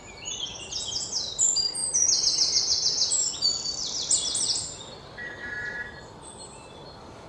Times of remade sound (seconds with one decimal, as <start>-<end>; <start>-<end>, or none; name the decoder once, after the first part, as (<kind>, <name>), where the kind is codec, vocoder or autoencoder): none